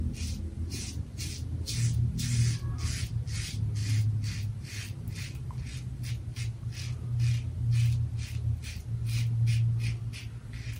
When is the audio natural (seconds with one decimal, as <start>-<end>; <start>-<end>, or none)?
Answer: 0.0-0.7; 1.3-10.8

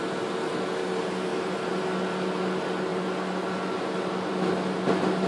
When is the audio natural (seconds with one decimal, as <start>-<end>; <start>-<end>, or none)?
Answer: 0.0-1.3; 1.8-5.3